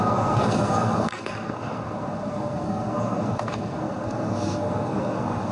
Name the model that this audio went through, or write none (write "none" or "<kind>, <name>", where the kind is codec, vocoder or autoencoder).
codec, SNAC